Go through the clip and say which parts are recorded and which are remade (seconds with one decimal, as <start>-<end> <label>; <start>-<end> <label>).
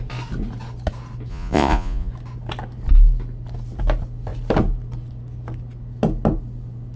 0.0-1.3 recorded; 1.3-2.1 remade; 2.1-7.0 recorded